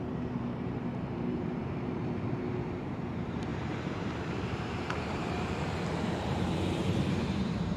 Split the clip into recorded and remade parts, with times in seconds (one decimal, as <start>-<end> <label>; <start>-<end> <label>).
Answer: 0.0-7.8 remade